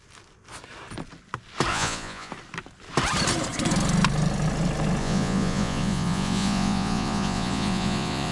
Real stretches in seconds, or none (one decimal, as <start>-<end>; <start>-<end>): 0.0-1.7; 2.3-5.0